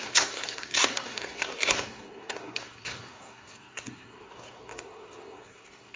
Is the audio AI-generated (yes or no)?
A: yes